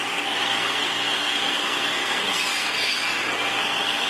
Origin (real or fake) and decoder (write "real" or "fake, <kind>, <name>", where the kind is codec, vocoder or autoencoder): fake, codec, SNAC